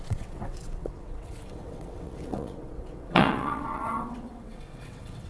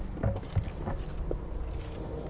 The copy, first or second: first